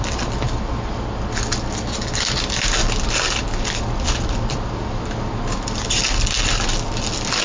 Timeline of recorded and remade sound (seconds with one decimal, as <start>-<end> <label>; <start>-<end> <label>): 0.0-7.4 recorded